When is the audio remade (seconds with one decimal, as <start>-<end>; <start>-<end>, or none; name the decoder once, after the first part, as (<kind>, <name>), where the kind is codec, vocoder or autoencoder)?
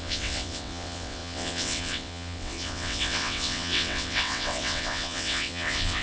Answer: 0.0-6.0 (vocoder, WaveNeXt)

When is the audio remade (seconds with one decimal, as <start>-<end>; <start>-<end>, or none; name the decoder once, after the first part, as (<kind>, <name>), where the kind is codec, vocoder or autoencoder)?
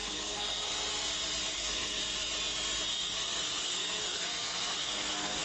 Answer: 0.0-0.7 (codec, SNAC); 1.5-2.0; 2.9-5.4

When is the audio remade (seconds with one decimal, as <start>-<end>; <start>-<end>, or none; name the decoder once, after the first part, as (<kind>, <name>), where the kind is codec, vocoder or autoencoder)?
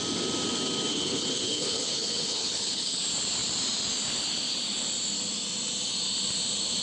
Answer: 0.9-3.0 (codec, HILCodec)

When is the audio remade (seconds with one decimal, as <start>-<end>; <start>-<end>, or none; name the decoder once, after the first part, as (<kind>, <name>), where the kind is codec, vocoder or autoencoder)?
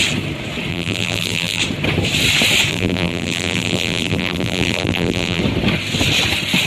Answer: 0.7-1.6 (vocoder, BigVGAN v2); 2.7-5.4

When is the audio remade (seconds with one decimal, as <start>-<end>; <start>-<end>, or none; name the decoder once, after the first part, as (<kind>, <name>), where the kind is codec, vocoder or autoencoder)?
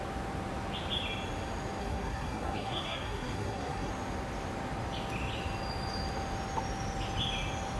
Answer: 1.8-3.9 (codec, SNAC)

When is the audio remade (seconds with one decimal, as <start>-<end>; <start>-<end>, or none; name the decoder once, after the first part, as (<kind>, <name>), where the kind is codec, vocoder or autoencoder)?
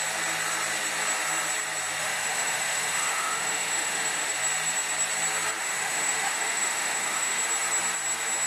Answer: 2.0-4.3 (autoencoder, DAC-VAE); 5.6-7.4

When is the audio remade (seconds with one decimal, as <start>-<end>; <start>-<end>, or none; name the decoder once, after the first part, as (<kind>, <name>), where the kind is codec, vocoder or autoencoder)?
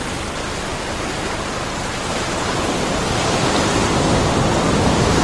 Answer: 0.0-5.2 (vocoder, BigVGAN v2)